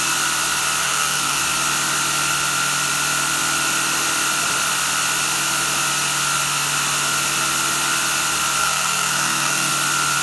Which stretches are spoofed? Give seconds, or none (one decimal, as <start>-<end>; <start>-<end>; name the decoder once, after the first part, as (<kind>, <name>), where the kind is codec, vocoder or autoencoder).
0.8-1.4 (codec, SNAC); 8.6-9.7